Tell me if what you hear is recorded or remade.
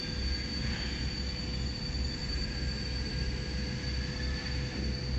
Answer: recorded